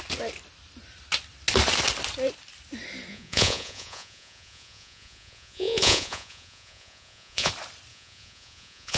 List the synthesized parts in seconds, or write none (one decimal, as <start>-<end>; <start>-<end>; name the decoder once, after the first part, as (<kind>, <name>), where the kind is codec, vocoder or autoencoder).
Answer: 3.1-7.5 (vocoder, Vocos); 7.9-9.0